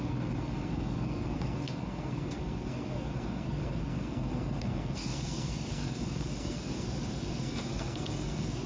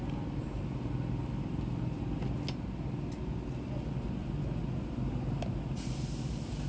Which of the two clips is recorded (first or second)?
second